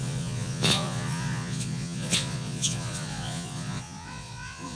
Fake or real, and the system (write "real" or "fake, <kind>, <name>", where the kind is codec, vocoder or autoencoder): fake, vocoder, Vocos